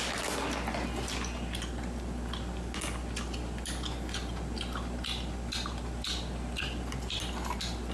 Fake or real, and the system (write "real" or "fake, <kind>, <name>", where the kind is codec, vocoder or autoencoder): real